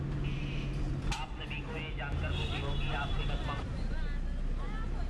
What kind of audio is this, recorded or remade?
recorded